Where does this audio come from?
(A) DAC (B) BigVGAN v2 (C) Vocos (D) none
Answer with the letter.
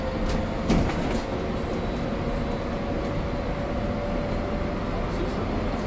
D